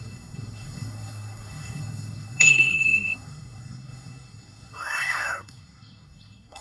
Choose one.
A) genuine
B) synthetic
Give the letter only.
B